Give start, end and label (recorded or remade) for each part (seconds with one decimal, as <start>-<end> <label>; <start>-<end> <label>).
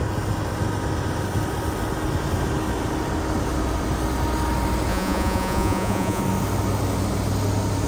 0.0-4.9 recorded; 4.9-6.2 remade; 6.2-7.9 recorded